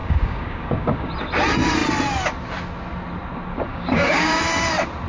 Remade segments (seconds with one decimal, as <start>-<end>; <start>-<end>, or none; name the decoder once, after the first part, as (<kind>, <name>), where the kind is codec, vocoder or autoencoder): 0.0-1.1 (codec, DAC); 3.7-4.4